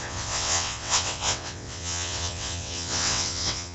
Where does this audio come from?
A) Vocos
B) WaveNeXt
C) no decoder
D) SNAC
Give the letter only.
B